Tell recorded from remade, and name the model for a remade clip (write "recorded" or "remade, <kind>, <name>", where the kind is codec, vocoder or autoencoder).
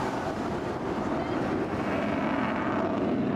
recorded